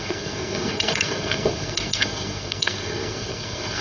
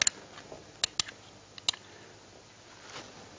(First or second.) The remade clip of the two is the first